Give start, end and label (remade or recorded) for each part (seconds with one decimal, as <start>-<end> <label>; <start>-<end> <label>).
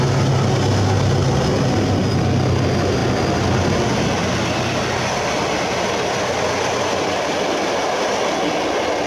0.0-9.1 recorded